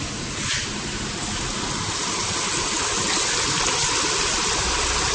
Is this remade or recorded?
recorded